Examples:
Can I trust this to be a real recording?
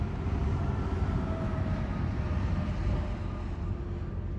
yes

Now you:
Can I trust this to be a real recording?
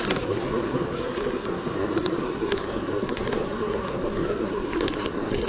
no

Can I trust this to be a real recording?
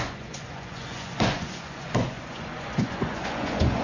no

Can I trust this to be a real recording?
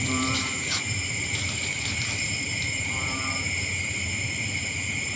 no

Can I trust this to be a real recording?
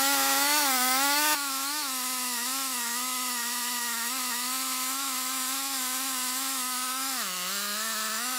no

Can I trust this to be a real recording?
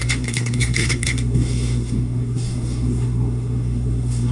no